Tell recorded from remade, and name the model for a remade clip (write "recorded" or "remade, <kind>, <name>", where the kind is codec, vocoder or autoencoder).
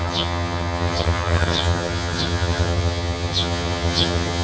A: remade, vocoder, HiFi-GAN